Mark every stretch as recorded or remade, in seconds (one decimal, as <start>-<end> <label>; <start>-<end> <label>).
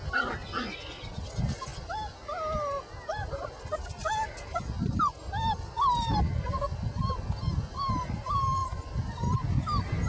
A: 0.0-10.1 recorded